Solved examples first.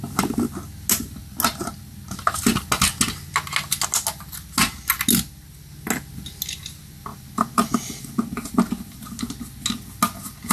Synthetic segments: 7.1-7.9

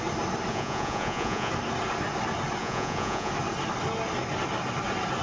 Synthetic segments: 0.5-1.5; 2.6-3.3

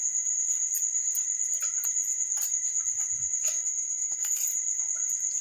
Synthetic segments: 3.4-4.4